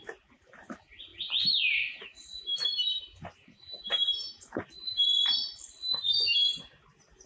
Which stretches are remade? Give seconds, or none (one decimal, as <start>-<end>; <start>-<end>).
1.1-1.6; 2.1-4.6

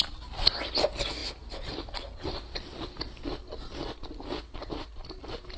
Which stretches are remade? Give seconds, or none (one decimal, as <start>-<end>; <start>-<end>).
none

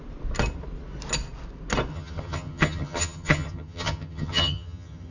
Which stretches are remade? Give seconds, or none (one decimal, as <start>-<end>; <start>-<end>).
1.9-5.1

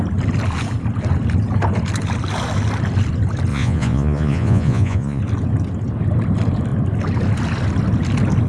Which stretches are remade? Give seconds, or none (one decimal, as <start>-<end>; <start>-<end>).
3.5-5.2

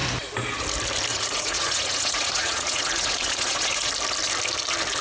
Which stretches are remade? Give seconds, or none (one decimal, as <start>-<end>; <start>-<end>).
1.1-3.9